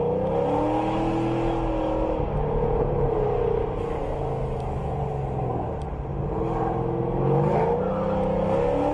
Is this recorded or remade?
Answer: recorded